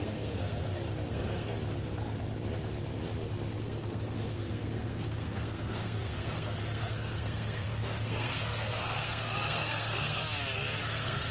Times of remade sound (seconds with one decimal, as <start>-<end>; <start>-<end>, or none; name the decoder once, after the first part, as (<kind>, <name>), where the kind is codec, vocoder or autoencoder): 0.0-0.6 (codec, SNAC); 1.1-1.5; 3.6-10.2; 10.8-11.3